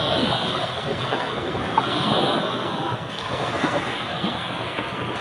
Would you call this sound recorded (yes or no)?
no